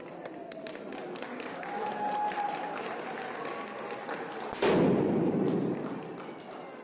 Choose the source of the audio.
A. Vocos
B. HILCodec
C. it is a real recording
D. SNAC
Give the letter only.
C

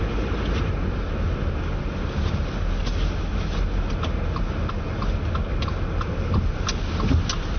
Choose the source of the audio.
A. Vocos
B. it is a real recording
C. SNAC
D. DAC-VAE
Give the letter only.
B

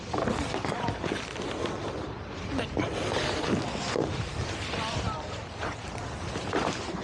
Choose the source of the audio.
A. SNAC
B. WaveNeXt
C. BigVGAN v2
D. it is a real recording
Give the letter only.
D